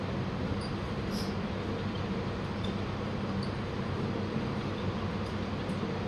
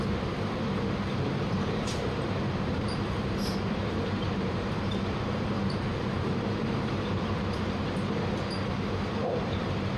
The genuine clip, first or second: first